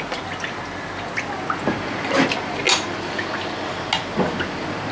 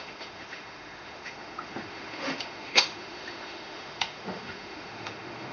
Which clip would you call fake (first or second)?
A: second